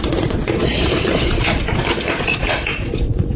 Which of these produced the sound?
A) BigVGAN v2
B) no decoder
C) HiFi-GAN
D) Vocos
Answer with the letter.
D